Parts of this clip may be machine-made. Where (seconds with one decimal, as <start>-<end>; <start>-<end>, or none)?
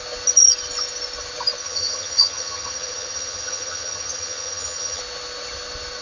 1.6-5.0